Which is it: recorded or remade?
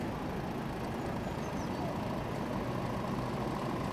recorded